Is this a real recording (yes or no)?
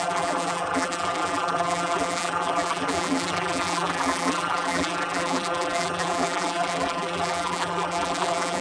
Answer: no